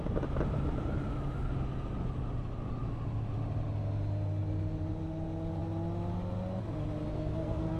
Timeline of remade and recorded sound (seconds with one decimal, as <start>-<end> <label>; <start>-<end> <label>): 0.0-7.1 recorded; 7.1-7.8 remade